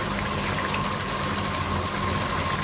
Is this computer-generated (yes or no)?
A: no